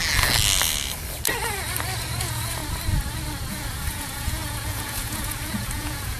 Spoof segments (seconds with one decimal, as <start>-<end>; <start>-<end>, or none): 2.2-2.6; 3.5-6.2